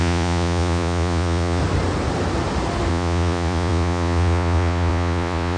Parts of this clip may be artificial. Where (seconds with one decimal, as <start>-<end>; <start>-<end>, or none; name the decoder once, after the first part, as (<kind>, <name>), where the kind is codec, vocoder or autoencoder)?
0.0-1.6 (vocoder, Vocos); 2.9-5.6